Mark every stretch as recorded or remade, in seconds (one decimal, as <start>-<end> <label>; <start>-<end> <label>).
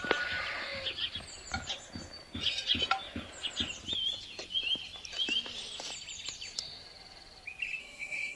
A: 0.0-7.8 recorded; 7.8-8.4 remade